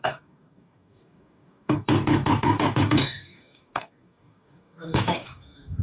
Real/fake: fake